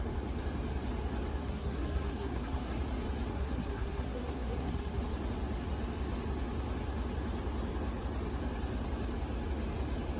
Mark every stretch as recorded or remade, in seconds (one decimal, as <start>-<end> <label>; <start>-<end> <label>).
0.0-1.4 recorded; 1.4-2.8 remade; 2.8-3.3 recorded; 3.3-5.0 remade; 5.0-10.2 recorded